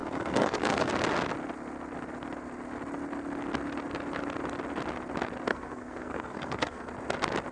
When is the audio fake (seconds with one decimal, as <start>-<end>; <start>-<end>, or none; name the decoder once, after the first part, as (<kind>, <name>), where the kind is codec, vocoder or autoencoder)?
0.0-0.9 (codec, SNAC); 5.5-6.9